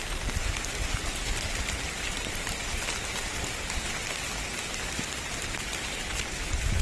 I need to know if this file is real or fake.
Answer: fake